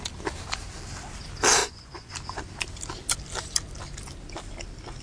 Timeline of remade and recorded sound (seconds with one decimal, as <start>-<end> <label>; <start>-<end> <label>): 0.0-1.6 recorded; 1.6-2.1 remade; 2.1-5.0 recorded